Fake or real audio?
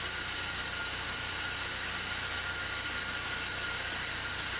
real